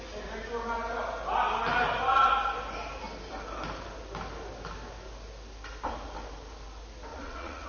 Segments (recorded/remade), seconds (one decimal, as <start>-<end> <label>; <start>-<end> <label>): 0.0-7.1 recorded; 7.1-7.7 remade